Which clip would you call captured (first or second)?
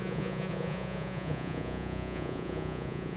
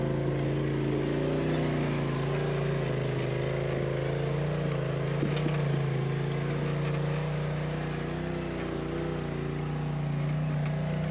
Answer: second